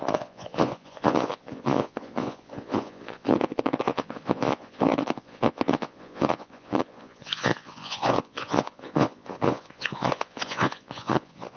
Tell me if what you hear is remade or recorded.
remade